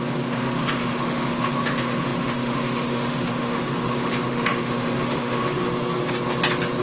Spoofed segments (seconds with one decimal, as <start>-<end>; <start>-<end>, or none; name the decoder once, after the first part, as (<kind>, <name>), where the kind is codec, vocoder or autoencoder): 0.0-5.7 (autoencoder, DAC-VAE)